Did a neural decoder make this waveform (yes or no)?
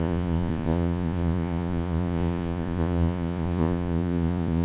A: yes